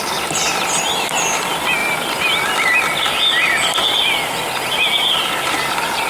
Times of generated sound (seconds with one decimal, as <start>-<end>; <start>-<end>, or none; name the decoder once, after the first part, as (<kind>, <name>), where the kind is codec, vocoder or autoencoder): none